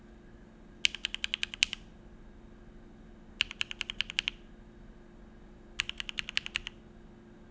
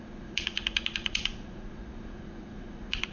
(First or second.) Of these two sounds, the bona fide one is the first